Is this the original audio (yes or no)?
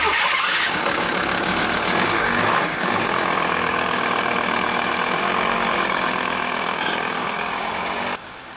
no